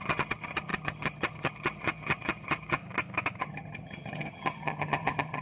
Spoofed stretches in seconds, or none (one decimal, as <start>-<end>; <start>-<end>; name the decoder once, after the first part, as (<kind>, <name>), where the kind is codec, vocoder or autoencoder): 0.0-2.8 (vocoder, HiFi-GAN); 3.4-5.4